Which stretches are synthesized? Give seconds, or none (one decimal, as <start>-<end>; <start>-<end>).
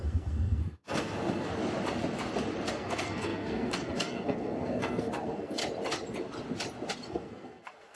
0.0-1.5; 2.7-5.6; 7.1-8.0